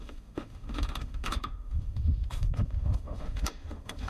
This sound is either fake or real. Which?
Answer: fake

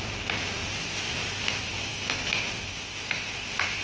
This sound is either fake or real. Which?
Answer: real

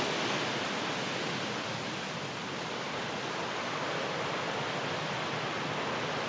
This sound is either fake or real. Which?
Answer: real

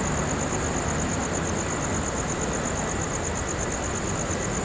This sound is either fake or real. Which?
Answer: real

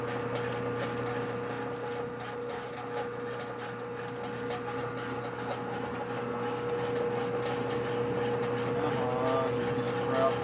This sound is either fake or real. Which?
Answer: real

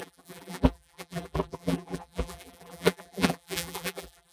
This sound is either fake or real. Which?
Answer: fake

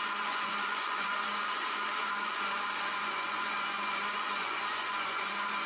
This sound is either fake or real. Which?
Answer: fake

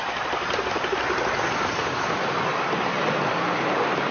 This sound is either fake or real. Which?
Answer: real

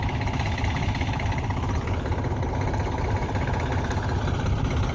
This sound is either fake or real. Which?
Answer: real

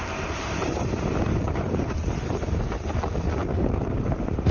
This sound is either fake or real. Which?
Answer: fake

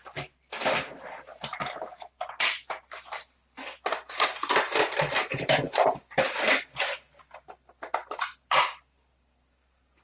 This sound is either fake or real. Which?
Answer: real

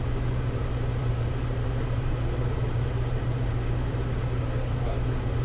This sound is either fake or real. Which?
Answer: fake